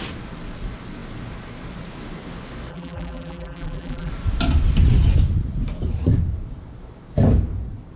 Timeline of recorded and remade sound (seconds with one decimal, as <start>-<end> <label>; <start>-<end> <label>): 0.0-2.7 recorded; 2.7-4.1 remade; 4.1-8.0 recorded